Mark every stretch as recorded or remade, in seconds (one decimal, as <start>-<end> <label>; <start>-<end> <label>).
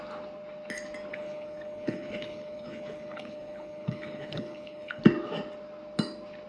0.0-1.1 recorded; 1.1-5.0 remade; 5.0-6.5 recorded